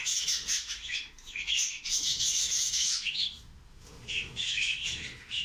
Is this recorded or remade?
remade